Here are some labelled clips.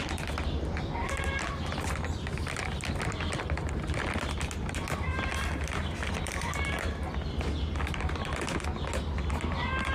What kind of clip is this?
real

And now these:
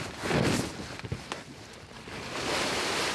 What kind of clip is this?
real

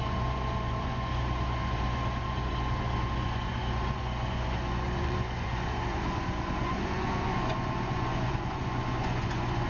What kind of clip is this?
fake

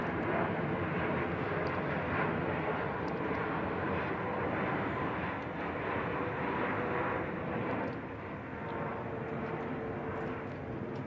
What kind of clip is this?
real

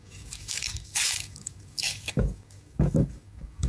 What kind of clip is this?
fake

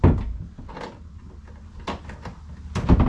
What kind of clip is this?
real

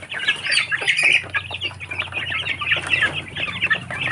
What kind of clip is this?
real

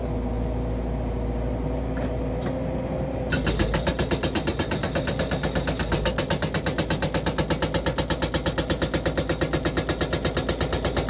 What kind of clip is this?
real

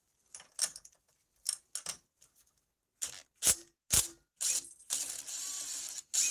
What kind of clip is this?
real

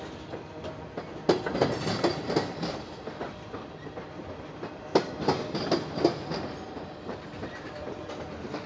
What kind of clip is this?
real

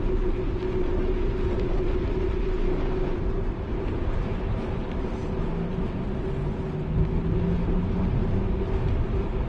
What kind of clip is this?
real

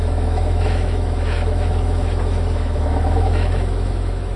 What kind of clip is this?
fake